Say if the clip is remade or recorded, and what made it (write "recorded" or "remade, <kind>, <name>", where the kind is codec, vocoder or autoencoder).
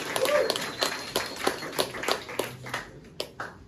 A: recorded